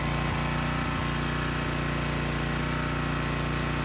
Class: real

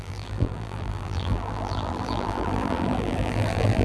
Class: fake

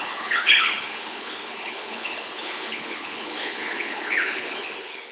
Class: fake